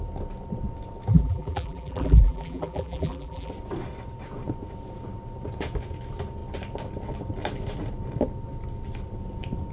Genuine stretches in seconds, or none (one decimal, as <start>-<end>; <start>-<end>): 0.0-1.1; 3.5-9.7